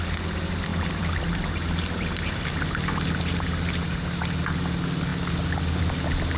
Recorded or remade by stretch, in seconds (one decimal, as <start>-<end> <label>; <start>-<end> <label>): 0.0-0.7 recorded; 0.7-1.3 remade; 1.3-6.4 recorded